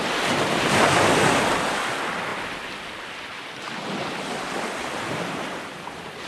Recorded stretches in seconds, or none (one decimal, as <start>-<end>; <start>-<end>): 0.0-6.3